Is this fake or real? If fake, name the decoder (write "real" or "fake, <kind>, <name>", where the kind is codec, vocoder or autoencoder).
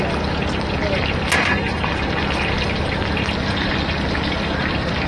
real